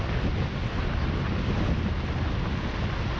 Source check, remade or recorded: recorded